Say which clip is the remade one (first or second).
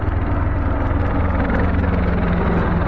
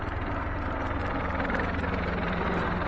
second